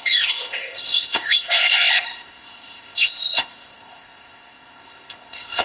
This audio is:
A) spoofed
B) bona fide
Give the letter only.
A